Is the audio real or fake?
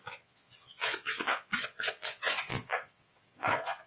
fake